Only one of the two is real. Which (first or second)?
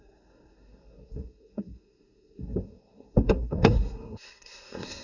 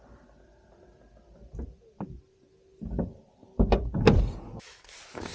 second